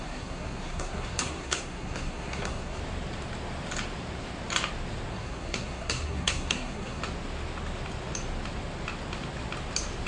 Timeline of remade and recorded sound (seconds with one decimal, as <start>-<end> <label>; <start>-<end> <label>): 0.0-2.8 remade; 2.8-5.1 recorded; 5.1-7.0 remade; 7.0-10.1 recorded